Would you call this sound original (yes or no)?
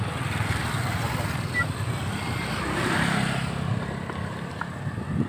yes